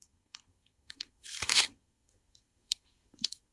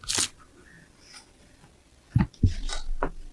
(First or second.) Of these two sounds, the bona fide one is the second